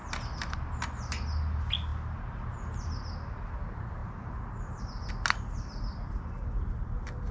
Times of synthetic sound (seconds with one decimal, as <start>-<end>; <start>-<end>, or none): none